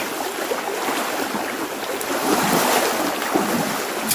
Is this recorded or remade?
recorded